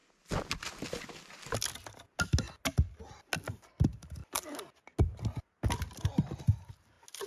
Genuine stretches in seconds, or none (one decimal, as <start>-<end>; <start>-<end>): 0.0-7.3